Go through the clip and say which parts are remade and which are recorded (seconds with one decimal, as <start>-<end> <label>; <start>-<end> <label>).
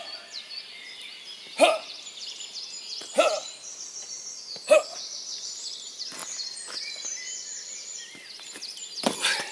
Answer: 0.0-9.5 remade